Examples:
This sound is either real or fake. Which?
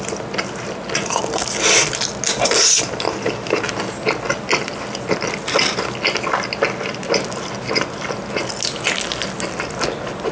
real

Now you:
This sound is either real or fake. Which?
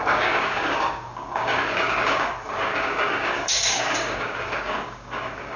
fake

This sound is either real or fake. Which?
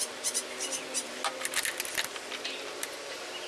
real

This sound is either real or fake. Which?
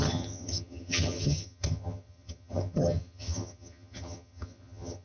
fake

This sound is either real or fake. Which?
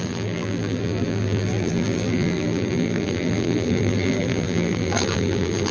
fake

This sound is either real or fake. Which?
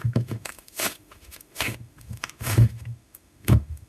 fake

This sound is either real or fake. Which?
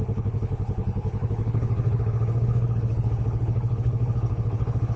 fake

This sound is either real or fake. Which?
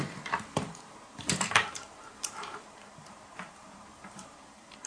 fake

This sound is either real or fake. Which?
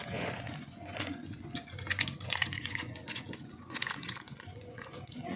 fake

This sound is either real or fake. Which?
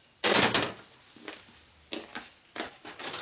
real